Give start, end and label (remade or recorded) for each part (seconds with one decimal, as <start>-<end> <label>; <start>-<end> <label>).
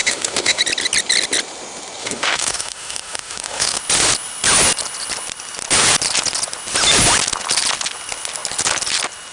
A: 0.0-0.6 remade; 0.6-2.0 recorded; 2.0-3.8 remade; 3.8-9.3 recorded